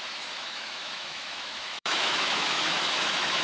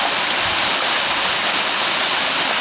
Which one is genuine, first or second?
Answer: second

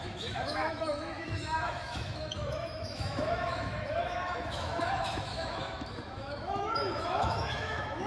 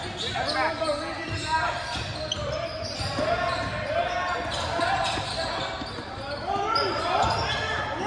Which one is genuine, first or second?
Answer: second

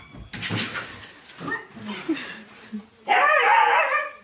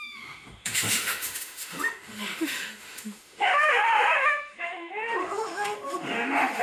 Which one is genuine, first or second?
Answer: first